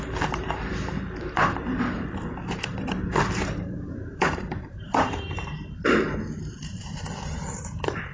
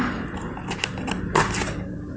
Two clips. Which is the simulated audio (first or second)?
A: first